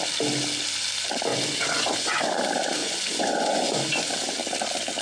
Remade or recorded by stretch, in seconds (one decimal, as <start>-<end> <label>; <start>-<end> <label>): 0.0-1.3 recorded; 1.3-2.3 remade; 2.3-2.8 recorded; 2.8-4.1 remade; 4.1-5.0 recorded